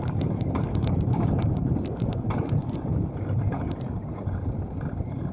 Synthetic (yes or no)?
yes